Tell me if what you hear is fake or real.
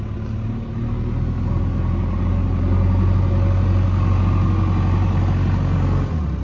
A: real